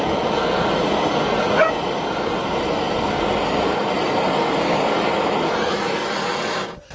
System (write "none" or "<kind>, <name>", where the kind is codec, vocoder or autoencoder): none